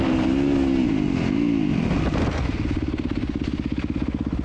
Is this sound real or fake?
real